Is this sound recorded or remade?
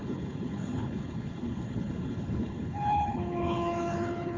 remade